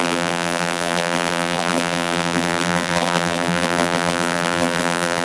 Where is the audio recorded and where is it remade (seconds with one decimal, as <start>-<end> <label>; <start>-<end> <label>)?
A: 0.0-5.2 remade